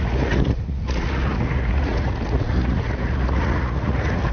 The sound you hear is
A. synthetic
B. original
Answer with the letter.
A